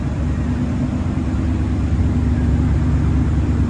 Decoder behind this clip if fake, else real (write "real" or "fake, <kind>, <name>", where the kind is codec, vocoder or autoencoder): real